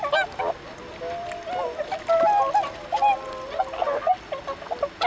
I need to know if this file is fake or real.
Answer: real